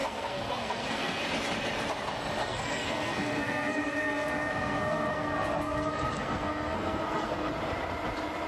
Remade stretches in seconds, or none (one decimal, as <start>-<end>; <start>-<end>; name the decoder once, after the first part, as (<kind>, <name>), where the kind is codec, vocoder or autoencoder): 0.0-1.2 (codec, SNAC); 2.4-7.5